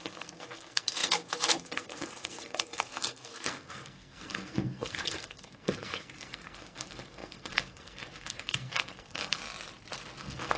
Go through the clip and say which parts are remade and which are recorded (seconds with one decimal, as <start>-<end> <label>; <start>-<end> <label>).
0.0-9.4 remade; 9.4-10.2 recorded; 10.2-10.6 remade